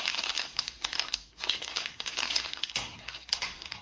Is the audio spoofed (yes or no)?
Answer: yes